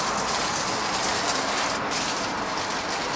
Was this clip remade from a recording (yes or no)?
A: no